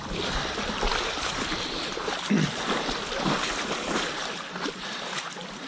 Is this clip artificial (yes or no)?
yes